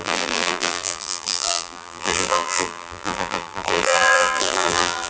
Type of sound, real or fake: fake